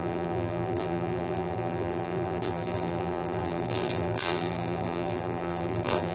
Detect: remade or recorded remade